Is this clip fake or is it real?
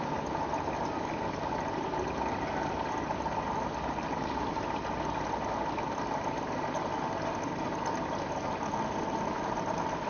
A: real